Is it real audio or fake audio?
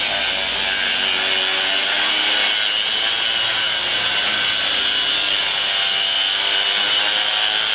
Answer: real